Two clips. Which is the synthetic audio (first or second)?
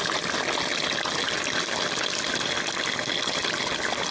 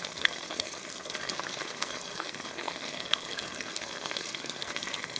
second